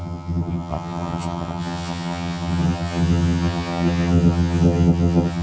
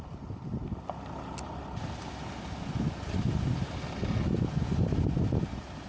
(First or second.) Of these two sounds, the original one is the second